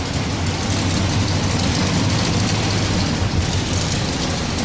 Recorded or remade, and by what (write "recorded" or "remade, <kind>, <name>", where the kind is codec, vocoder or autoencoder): recorded